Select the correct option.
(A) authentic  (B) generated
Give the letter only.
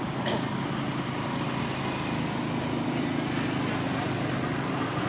A